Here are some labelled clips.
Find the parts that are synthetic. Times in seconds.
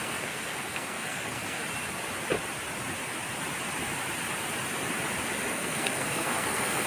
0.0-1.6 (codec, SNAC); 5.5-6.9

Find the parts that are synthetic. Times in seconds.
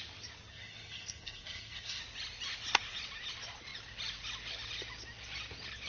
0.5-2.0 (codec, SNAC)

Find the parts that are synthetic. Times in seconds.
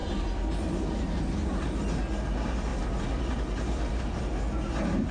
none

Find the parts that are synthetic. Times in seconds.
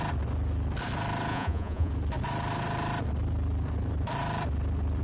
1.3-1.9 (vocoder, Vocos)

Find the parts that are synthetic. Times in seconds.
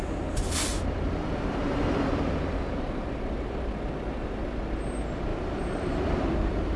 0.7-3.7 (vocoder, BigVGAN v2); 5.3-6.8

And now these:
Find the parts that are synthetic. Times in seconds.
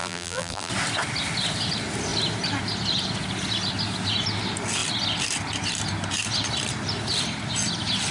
0.0-0.7 (vocoder, BigVGAN v2)